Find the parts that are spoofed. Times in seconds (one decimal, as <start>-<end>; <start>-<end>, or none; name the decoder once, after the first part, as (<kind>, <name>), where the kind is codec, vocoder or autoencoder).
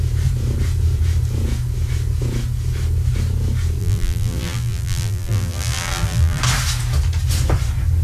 3.8-6.4 (vocoder, BigVGAN v2)